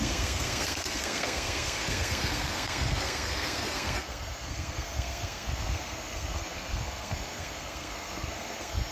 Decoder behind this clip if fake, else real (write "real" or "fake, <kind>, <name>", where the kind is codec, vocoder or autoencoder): fake, codec, SNAC